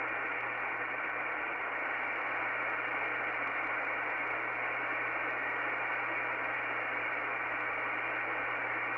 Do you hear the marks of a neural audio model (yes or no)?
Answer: no